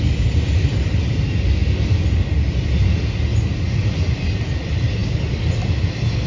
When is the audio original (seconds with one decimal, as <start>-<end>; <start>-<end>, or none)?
0.0-6.3